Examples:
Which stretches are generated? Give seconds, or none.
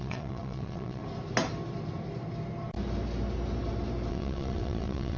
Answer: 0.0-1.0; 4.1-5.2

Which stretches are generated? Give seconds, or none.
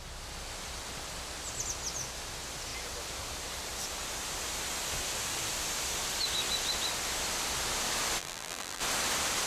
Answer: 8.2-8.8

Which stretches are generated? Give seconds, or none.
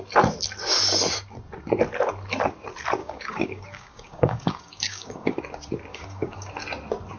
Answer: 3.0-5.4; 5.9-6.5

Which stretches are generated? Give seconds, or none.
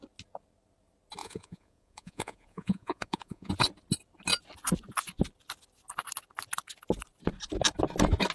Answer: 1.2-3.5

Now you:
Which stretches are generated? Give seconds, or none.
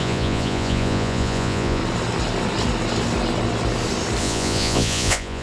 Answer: 0.0-1.8; 4.2-5.4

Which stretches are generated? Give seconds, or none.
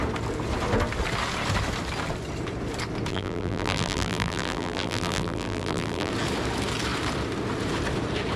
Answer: 3.1-6.1